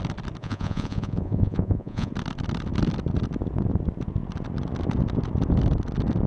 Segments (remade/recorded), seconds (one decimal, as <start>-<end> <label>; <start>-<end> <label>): 0.0-0.4 recorded; 0.4-2.1 remade; 2.1-6.3 recorded